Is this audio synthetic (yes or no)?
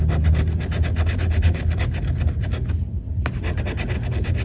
no